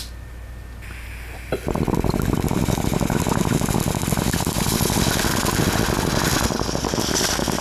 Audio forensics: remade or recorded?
recorded